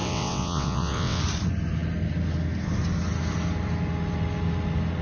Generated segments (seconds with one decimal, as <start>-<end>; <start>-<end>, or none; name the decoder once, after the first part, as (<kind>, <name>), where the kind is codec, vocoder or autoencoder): 0.0-1.2 (vocoder, WaveNeXt)